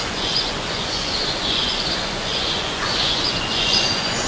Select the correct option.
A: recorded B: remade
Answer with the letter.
B